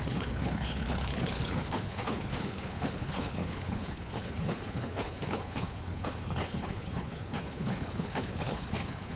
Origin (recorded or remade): remade